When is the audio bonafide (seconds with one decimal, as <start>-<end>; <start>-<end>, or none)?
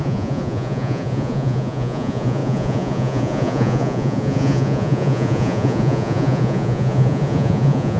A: none